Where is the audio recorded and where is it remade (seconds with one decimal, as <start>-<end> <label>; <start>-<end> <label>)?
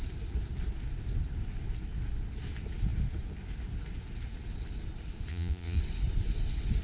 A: 0.0-5.3 recorded; 5.3-5.8 remade; 5.8-6.8 recorded